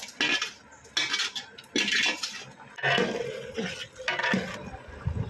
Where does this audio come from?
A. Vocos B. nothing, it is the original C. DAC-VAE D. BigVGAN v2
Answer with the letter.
B